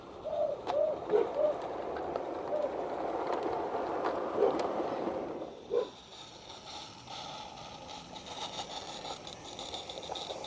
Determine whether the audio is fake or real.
real